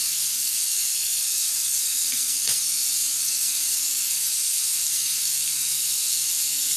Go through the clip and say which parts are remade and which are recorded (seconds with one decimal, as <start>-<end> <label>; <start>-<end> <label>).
0.0-6.8 remade